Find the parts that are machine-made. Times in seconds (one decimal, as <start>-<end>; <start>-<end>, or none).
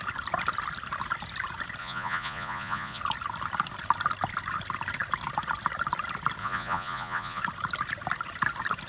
1.8-3.0; 6.4-7.4